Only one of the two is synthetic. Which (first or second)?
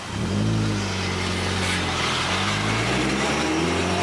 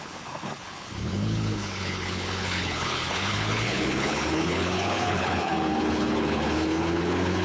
second